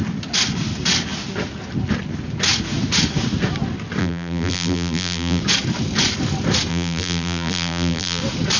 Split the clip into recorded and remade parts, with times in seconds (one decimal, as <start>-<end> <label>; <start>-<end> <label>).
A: 0.0-4.0 recorded; 4.0-5.4 remade; 5.4-6.7 recorded; 6.7-8.2 remade; 8.2-8.6 recorded